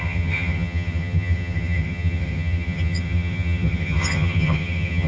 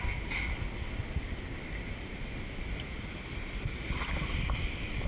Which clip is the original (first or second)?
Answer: second